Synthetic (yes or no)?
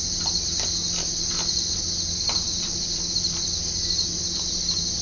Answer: no